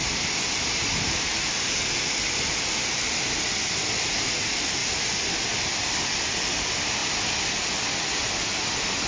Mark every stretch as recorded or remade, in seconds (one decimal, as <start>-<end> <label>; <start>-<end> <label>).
0.0-3.3 recorded; 3.3-4.8 remade; 4.8-5.6 recorded; 5.6-7.0 remade; 7.0-9.1 recorded

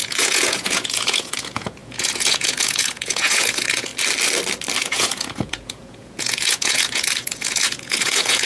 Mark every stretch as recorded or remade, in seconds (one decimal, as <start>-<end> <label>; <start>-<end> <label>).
0.0-3.9 remade; 3.9-4.8 recorded; 4.8-8.5 remade

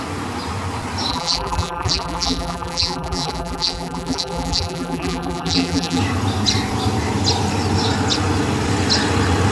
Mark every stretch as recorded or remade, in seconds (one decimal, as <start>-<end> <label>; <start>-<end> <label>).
0.0-1.1 recorded; 1.1-6.0 remade; 6.0-9.5 recorded

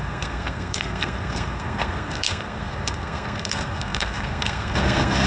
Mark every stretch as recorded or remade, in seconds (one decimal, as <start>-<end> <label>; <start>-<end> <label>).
0.0-5.3 remade

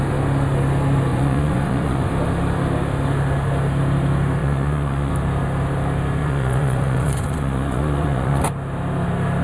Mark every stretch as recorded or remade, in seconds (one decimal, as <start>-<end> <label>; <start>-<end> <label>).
0.0-1.1 recorded; 1.1-2.1 remade; 2.1-4.4 recorded; 4.4-5.1 remade; 5.1-6.2 recorded; 6.2-8.5 remade; 8.5-9.4 recorded

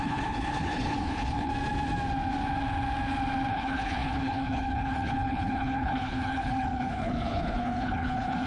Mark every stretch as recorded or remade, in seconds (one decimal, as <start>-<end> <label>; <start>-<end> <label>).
0.0-1.5 remade; 1.5-3.5 recorded; 3.5-8.5 remade

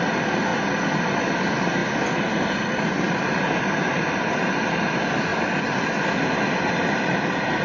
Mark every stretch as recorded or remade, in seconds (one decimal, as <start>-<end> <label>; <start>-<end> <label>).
0.0-7.6 recorded

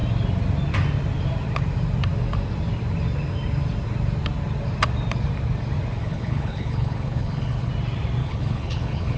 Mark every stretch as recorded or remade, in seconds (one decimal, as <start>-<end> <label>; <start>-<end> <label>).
0.0-6.0 recorded; 6.0-7.7 remade; 7.7-8.2 recorded; 8.2-9.2 remade